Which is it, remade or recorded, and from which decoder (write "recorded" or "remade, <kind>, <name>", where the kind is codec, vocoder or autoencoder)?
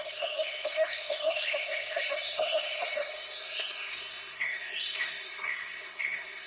remade, codec, SNAC